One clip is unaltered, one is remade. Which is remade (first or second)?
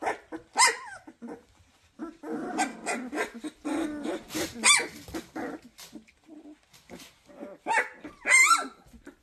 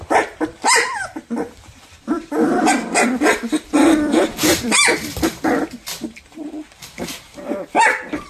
second